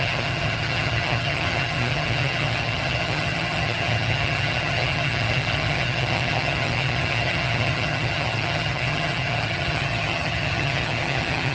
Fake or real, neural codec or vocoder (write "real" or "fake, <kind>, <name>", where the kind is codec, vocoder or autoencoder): fake, vocoder, HiFi-GAN